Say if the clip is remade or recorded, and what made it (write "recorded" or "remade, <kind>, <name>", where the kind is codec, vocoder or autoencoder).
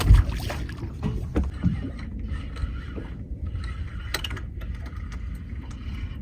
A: recorded